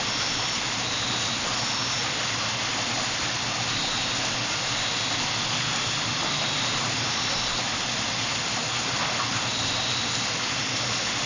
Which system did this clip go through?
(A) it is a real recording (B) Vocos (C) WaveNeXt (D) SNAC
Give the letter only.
A